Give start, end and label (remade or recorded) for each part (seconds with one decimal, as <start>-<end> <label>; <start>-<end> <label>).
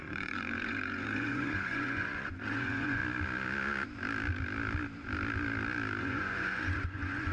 0.0-3.0 remade; 3.0-6.0 recorded; 6.0-7.3 remade